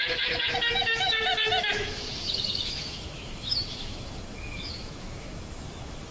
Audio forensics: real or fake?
fake